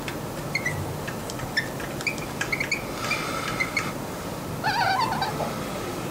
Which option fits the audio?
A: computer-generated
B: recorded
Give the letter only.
B